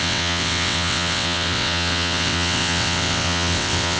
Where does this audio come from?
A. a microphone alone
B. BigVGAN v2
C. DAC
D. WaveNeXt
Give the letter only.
D